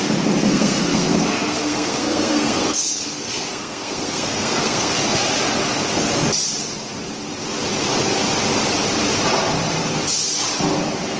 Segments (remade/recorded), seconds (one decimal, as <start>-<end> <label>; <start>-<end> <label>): 0.0-0.5 recorded; 0.5-4.9 remade; 4.9-11.2 recorded